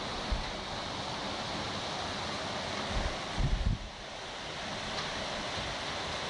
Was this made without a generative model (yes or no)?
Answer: yes